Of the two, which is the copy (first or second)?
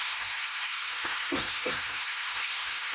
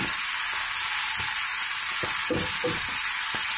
first